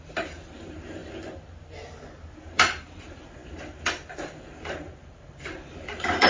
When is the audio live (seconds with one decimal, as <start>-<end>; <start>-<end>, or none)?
1.0-2.3